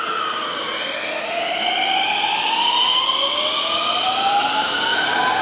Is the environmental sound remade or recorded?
recorded